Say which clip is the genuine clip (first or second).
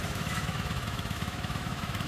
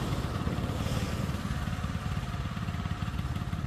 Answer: second